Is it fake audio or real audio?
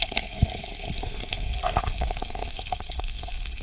fake